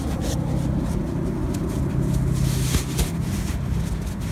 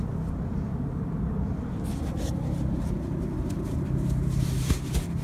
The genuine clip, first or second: first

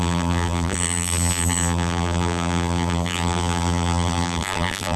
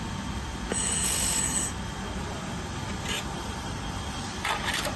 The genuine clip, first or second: second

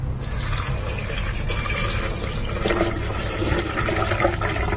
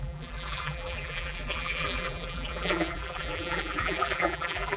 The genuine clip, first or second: first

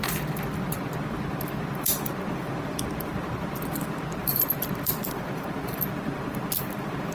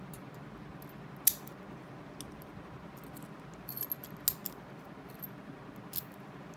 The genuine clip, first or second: second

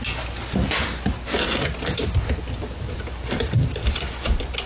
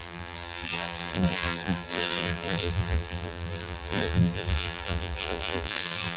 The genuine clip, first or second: first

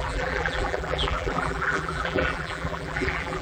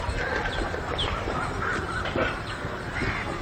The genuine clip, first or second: second